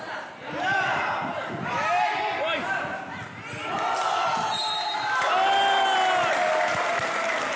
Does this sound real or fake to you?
real